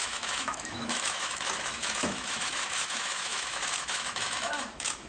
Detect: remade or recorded remade